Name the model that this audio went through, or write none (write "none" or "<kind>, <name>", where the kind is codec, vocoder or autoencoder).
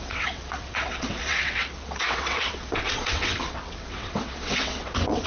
vocoder, WaveNeXt